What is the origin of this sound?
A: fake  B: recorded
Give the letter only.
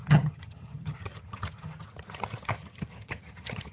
A